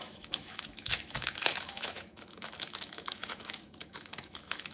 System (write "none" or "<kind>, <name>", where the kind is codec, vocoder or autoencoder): autoencoder, DAC-VAE